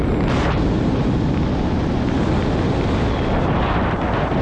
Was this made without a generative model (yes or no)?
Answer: yes